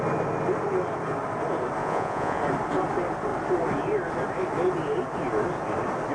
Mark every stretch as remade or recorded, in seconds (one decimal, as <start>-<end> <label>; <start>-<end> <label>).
0.0-1.8 recorded; 1.8-2.4 remade; 2.4-6.1 recorded